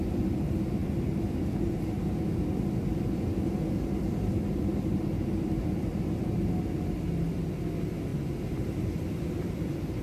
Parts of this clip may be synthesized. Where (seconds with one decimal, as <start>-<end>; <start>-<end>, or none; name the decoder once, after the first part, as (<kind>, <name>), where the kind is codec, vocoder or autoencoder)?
none